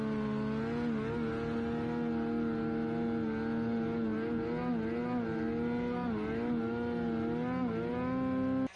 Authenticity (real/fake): real